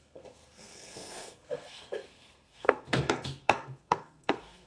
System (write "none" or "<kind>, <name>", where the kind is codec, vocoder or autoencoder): codec, SNAC